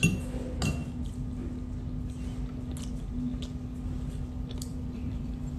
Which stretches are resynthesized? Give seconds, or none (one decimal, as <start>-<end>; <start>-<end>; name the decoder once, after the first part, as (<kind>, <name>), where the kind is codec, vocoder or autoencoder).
4.7-5.6 (vocoder, BigVGAN v2)